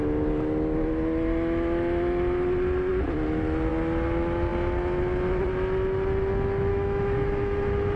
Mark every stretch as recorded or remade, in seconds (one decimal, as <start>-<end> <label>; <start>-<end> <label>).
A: 0.0-6.7 recorded; 6.7-8.0 remade